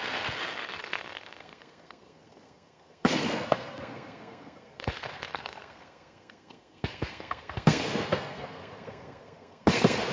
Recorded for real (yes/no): no